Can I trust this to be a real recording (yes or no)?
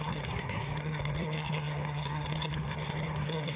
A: no